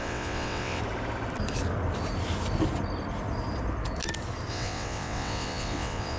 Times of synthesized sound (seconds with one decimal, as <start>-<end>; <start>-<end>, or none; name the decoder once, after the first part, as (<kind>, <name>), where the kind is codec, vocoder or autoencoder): 0.0-0.8 (vocoder, WaveNeXt); 4.5-6.2